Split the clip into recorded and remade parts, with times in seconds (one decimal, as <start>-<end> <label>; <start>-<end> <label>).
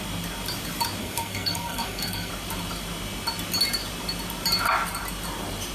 0.0-1.0 recorded; 1.0-2.3 remade; 2.3-5.7 recorded